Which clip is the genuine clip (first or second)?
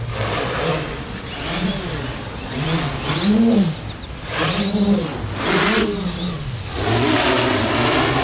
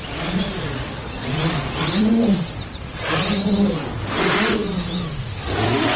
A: first